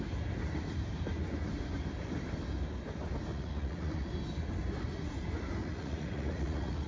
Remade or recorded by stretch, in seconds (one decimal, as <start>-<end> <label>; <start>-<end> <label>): 0.0-3.3 recorded; 3.3-4.1 remade; 4.1-5.6 recorded; 5.6-6.9 remade